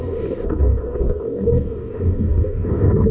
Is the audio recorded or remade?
remade